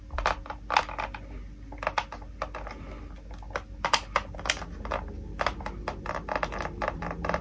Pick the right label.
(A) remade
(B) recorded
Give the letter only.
B